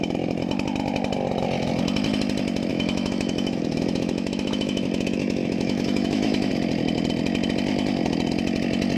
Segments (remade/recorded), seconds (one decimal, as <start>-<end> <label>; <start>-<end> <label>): 0.0-2.7 recorded; 2.7-6.5 remade; 6.5-9.0 recorded